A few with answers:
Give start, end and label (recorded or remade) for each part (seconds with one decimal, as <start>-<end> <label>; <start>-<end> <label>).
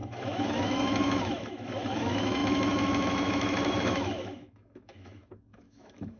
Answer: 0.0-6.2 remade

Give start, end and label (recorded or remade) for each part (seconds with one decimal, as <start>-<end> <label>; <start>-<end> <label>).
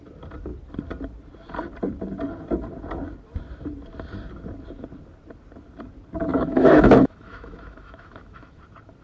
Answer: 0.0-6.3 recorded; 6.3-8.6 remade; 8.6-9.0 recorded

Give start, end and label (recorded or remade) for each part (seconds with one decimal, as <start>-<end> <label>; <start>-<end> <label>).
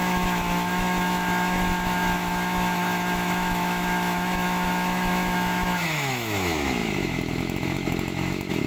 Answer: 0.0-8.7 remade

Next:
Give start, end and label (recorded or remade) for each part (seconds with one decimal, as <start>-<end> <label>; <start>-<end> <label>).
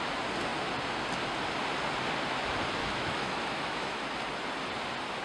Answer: 0.0-2.8 recorded; 2.8-4.0 remade; 4.0-5.2 recorded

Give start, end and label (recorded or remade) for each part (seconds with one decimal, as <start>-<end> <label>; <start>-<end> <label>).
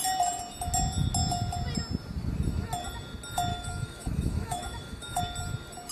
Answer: 0.0-3.5 recorded; 3.5-5.2 remade; 5.2-5.9 recorded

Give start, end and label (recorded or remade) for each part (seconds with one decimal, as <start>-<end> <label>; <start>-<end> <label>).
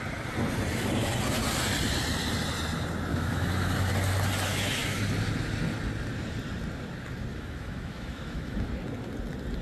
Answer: 0.0-3.1 recorded; 3.1-3.9 remade; 3.9-4.5 recorded; 4.5-5.0 remade; 5.0-7.3 recorded; 7.3-8.7 remade; 8.7-9.6 recorded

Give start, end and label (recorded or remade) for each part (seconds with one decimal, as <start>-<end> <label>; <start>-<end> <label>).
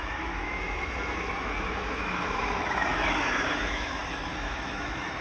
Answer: 0.0-5.2 remade